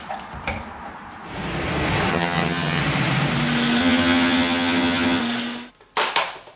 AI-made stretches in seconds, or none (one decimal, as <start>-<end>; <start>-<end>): 2.1-2.8; 3.8-5.2